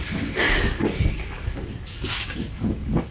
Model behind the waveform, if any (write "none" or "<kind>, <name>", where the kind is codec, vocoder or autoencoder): codec, DAC